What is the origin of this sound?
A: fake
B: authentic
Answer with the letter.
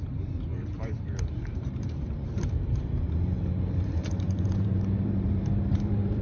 A